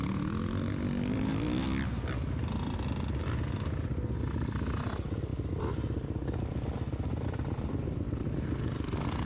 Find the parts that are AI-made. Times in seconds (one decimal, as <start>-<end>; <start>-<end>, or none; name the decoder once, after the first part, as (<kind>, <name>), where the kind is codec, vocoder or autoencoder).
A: none